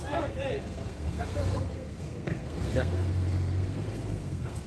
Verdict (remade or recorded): remade